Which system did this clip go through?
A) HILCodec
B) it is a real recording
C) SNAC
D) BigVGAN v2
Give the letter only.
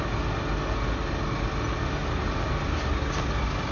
B